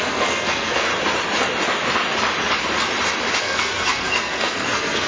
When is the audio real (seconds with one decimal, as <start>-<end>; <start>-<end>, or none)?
0.9-3.4